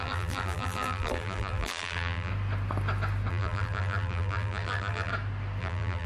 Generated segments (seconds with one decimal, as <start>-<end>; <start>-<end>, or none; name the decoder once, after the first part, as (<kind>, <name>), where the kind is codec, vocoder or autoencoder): 0.0-2.3 (vocoder, BigVGAN v2); 3.3-5.1; 5.6-6.1